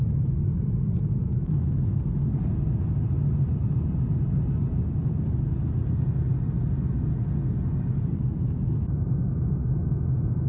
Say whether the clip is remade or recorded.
recorded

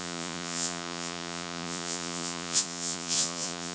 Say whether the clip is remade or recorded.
remade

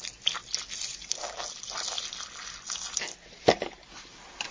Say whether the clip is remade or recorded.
recorded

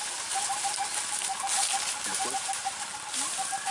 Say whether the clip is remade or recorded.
recorded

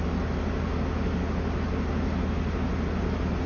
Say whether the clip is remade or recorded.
recorded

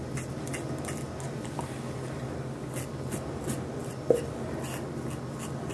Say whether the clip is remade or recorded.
recorded